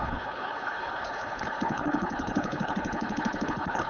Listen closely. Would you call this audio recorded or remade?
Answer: remade